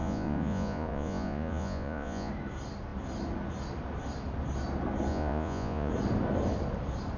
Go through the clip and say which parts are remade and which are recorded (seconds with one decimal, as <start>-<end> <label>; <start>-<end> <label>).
0.0-2.3 remade; 2.3-5.1 recorded; 5.1-5.9 remade; 5.9-7.2 recorded